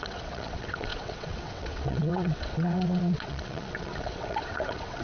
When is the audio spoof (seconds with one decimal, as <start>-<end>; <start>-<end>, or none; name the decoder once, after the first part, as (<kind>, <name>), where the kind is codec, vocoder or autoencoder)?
0.0-5.0 (vocoder, WaveNeXt)